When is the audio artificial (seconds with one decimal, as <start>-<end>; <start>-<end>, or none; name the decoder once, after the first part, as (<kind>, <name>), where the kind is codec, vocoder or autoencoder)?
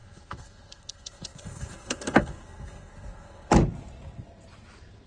0.0-3.5 (codec, SNAC)